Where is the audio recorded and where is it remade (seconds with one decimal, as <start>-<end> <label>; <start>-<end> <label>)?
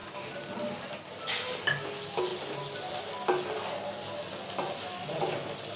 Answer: 0.0-5.8 recorded